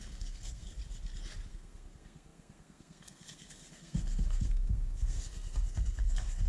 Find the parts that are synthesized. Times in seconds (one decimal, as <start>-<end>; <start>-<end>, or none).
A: 0.0-0.8; 1.5-6.5